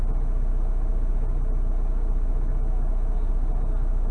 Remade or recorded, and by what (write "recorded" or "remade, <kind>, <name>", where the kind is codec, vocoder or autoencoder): recorded